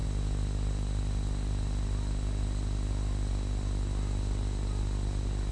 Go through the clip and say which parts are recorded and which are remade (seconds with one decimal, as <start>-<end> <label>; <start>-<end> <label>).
0.0-5.5 recorded